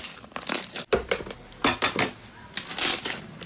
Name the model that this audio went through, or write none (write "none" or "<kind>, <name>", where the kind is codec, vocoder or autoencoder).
none